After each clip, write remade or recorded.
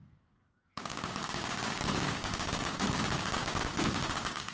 remade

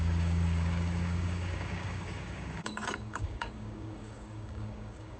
remade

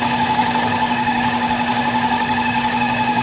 remade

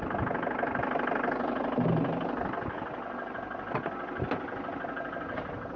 recorded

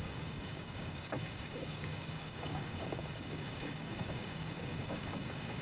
remade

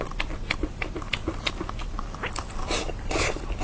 recorded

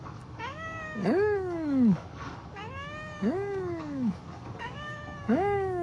remade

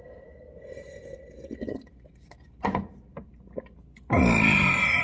recorded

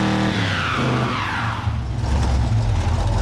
recorded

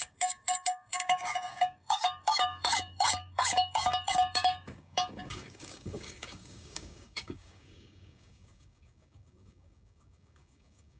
remade